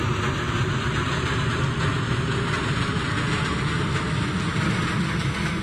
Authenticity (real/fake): real